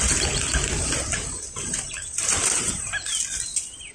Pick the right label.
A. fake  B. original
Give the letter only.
B